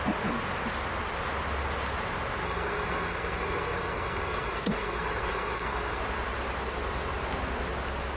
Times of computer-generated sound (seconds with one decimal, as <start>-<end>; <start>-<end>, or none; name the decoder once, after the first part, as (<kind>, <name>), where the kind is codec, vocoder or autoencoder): 2.4-6.0 (codec, SNAC)